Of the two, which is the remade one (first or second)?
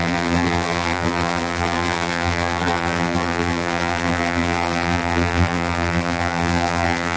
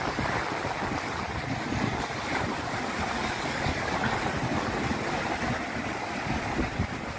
first